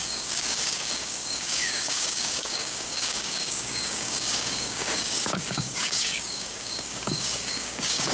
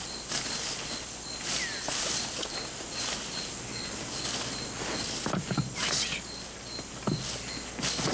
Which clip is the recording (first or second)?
second